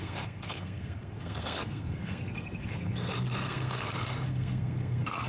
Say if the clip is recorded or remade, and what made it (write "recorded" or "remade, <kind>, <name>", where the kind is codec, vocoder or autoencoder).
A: remade, codec, SNAC